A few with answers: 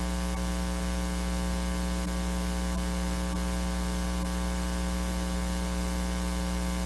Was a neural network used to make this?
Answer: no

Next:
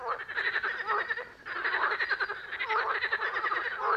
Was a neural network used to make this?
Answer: no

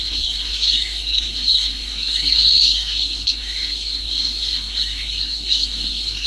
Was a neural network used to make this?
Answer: yes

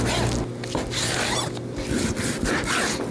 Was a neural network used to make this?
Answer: no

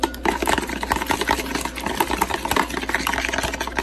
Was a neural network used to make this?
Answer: no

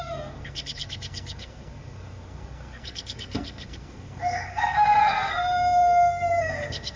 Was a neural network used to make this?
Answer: yes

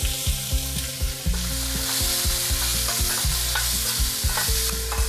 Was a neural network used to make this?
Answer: no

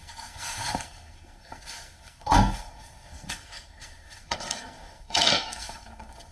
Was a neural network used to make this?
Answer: yes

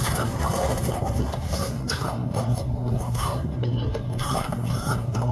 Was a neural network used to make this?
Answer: yes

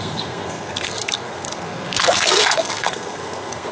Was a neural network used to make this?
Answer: yes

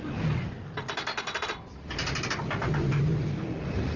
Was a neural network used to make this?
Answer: no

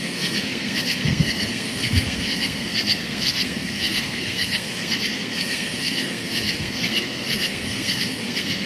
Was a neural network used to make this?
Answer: yes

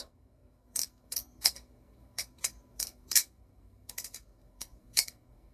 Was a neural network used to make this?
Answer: yes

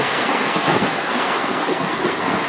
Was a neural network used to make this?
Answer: yes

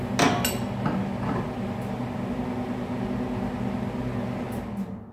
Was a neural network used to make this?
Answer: no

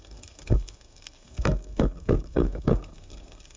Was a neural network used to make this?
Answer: yes